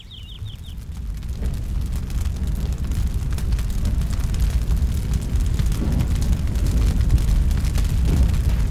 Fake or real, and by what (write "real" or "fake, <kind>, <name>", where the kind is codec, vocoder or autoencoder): real